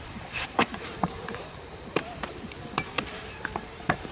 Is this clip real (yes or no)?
no